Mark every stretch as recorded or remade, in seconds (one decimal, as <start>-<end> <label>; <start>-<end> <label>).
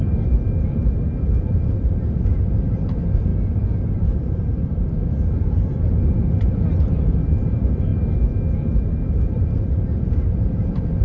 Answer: 0.0-7.9 remade; 7.9-8.9 recorded; 8.9-11.0 remade